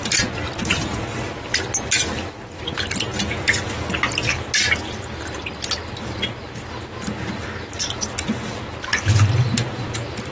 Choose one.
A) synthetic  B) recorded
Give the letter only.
B